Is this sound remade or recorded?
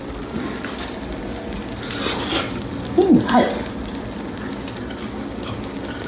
recorded